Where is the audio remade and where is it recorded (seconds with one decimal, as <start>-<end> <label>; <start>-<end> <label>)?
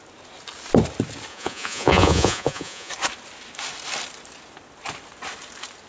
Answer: 0.0-1.3 recorded; 1.3-2.9 remade; 2.9-5.9 recorded